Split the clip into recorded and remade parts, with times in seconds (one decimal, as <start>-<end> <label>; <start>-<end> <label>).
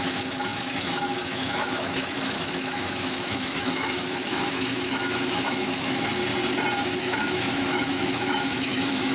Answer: 0.0-6.1 remade; 6.1-7.0 recorded; 7.0-9.1 remade